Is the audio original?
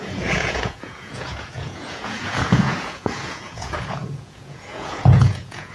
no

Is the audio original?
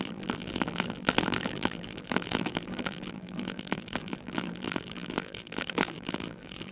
no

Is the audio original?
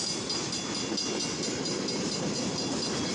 yes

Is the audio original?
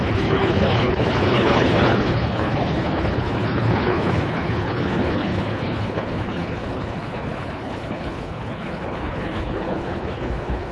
no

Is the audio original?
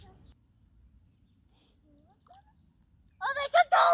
yes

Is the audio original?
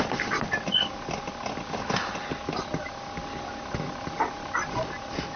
yes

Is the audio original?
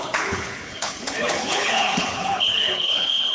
no